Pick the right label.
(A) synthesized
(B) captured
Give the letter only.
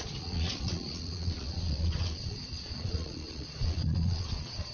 A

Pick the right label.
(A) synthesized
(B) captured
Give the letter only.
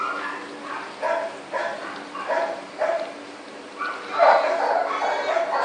B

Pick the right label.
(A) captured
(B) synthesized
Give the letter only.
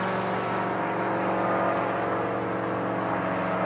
A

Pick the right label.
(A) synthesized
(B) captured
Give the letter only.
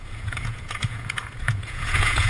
A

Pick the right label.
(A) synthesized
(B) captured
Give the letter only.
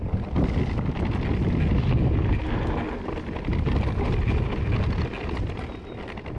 B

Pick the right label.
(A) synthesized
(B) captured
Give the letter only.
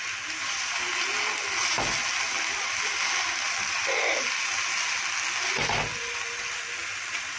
B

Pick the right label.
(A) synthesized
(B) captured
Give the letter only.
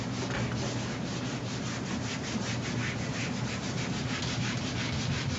B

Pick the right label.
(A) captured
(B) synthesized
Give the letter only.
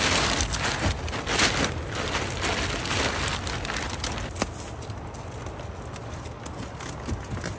A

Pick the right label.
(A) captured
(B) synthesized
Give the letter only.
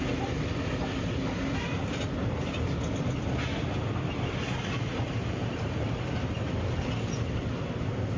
A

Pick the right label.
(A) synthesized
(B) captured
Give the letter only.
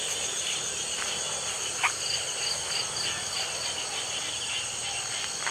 B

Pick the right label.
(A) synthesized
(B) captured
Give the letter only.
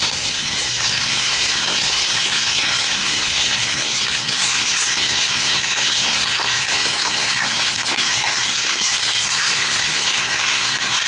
A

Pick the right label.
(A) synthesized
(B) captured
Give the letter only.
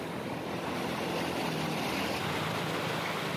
B